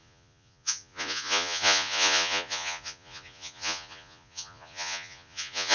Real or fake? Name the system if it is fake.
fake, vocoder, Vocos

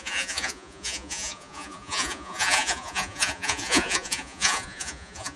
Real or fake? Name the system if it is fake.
fake, vocoder, Vocos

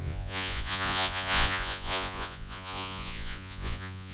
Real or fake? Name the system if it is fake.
fake, vocoder, Vocos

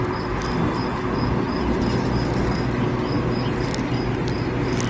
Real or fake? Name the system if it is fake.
real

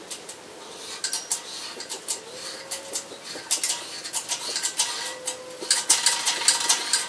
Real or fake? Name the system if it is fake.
real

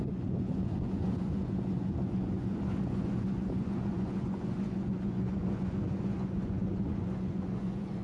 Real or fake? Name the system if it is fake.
fake, vocoder, Vocos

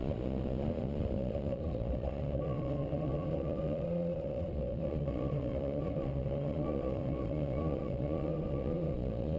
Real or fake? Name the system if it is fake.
fake, vocoder, Vocos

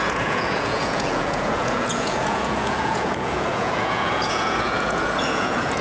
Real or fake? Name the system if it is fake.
fake, vocoder, Vocos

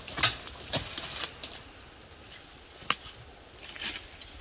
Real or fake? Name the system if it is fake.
real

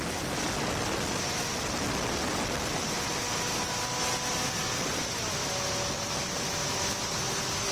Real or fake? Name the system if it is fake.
real